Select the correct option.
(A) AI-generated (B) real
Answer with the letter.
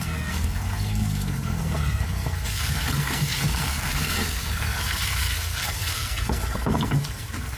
A